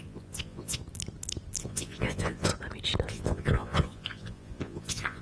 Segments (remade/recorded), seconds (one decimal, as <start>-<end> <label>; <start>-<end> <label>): 0.0-0.8 remade; 0.8-1.6 recorded; 1.6-2.5 remade; 2.5-3.1 recorded; 3.1-5.2 remade

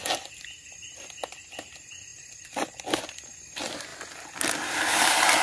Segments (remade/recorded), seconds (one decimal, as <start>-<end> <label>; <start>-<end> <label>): 0.0-2.1 recorded; 2.1-3.0 remade; 3.0-3.9 recorded; 3.9-4.9 remade; 4.9-5.4 recorded

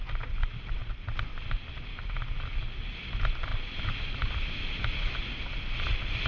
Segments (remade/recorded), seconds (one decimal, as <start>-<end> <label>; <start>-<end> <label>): 0.0-6.3 recorded

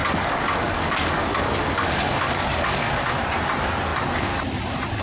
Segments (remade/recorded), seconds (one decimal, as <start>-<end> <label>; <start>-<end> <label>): 0.0-3.0 remade; 3.0-5.0 recorded

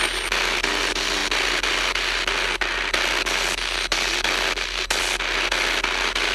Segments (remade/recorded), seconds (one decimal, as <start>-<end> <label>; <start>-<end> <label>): 0.0-6.3 recorded

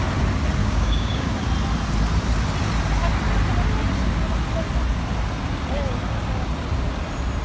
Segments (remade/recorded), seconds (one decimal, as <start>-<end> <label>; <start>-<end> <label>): 0.0-0.6 recorded; 0.6-1.3 remade; 1.3-7.4 recorded